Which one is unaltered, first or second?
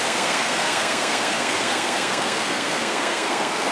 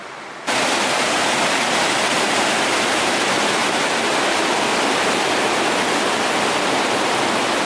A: second